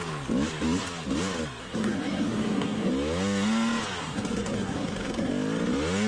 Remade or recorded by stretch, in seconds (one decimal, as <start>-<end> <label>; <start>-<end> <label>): 0.0-1.6 recorded; 1.6-2.9 remade; 2.9-4.0 recorded; 4.0-5.3 remade; 5.3-6.1 recorded